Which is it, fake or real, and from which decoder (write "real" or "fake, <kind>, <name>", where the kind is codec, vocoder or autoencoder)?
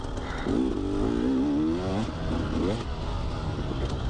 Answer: real